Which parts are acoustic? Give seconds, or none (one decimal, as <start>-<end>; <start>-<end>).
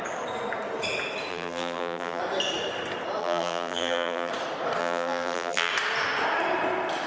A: 0.0-1.3; 2.2-3.2; 4.3-4.8; 5.7-7.1